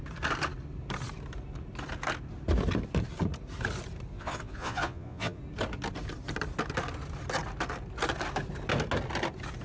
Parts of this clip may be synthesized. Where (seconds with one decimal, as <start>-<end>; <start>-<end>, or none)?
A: 4.1-5.4